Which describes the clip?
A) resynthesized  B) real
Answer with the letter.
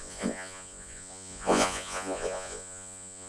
A